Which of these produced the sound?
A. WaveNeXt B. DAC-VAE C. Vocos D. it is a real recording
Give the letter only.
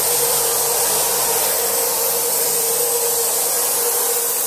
D